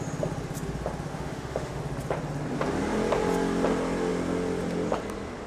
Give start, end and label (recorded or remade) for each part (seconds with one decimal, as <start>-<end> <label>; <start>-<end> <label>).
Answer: 0.0-1.1 recorded; 1.1-1.8 remade; 1.8-5.5 recorded